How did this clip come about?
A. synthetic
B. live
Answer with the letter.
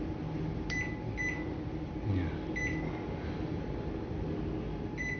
B